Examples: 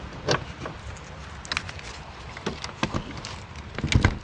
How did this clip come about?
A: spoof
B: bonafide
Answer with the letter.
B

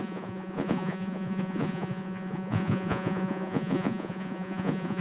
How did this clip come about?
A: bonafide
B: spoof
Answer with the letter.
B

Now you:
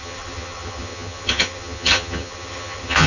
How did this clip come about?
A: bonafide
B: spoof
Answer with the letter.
B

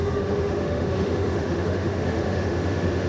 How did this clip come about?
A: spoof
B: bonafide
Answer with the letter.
A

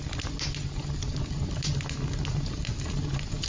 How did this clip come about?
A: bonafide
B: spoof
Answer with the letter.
A